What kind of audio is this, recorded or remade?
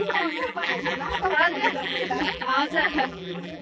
remade